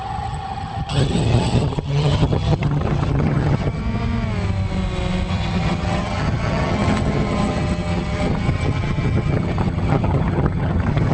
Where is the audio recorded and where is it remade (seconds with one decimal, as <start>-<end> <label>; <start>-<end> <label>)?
0.0-3.8 remade; 3.8-5.3 recorded; 5.3-11.1 remade

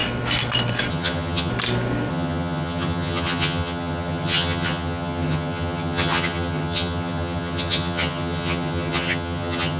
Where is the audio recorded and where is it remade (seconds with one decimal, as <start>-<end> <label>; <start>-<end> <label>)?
0.0-0.9 recorded; 0.9-1.5 remade; 1.5-2.1 recorded; 2.1-9.8 remade

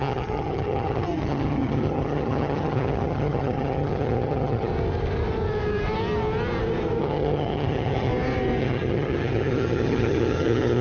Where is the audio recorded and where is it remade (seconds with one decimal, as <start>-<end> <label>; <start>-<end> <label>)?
0.0-4.7 remade; 4.7-7.0 recorded; 7.0-8.1 remade; 8.1-8.6 recorded; 8.6-10.8 remade

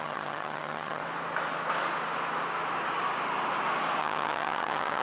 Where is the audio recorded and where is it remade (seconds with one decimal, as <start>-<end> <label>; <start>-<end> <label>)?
0.0-1.0 remade; 1.0-4.0 recorded; 4.0-5.0 remade

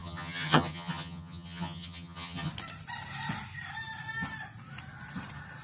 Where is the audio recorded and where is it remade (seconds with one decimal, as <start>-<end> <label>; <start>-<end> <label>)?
0.0-2.5 remade; 2.5-5.6 recorded

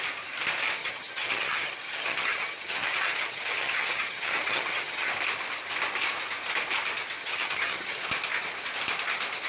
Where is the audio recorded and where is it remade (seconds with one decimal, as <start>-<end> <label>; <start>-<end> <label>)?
0.0-0.8 recorded; 0.8-5.1 remade; 5.1-7.2 recorded; 7.2-8.0 remade; 8.0-9.5 recorded

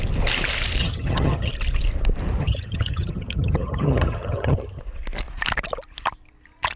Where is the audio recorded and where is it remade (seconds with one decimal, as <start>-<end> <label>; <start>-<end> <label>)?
0.0-0.8 recorded; 0.8-1.5 remade; 1.5-2.4 recorded; 2.4-4.8 remade; 4.8-6.8 recorded

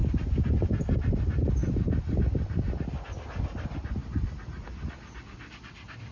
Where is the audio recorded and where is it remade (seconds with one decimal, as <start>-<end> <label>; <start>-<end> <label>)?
0.0-6.1 recorded